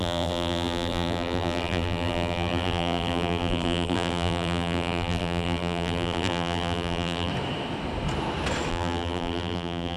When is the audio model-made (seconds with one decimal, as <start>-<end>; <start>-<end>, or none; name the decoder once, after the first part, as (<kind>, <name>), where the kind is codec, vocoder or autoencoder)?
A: 0.0-7.3 (vocoder, BigVGAN v2); 8.7-10.0